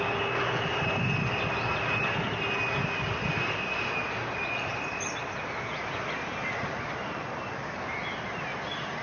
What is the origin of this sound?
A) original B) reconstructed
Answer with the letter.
A